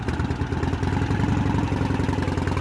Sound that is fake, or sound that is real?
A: real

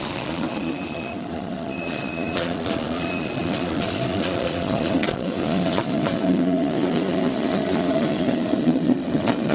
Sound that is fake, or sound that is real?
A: fake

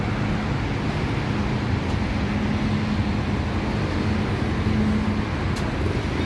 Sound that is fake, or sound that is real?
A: real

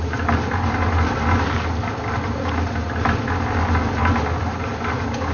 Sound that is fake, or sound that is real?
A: real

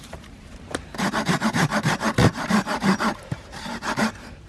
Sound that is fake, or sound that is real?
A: fake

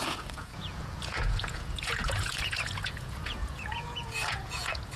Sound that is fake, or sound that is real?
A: fake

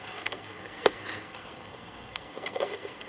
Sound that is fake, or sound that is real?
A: fake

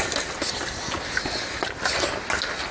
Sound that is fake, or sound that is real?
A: real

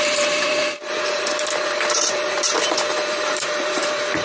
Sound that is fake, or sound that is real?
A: fake